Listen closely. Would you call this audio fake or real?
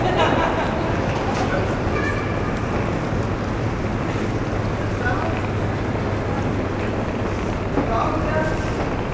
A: real